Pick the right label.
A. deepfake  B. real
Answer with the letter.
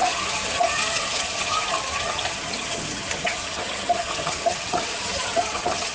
A